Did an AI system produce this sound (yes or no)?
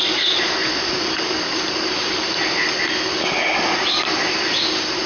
no